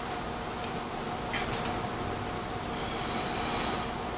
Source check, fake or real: real